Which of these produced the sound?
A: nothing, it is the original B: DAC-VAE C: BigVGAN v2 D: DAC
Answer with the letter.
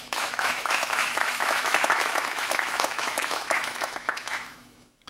B